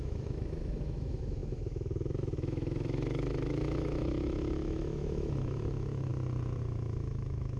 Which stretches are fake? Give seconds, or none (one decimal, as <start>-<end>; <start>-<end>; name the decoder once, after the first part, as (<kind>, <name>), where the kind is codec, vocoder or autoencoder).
0.0-6.1 (autoencoder, DAC-VAE); 6.6-7.6